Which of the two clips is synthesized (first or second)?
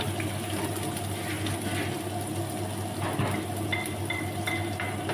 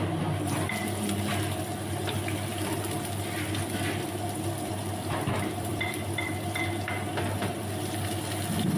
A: second